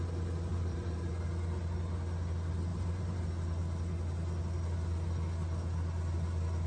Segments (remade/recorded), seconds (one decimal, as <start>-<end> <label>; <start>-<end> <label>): 0.0-0.5 recorded; 0.5-1.1 remade; 1.1-2.7 recorded; 2.7-3.2 remade; 3.2-6.7 recorded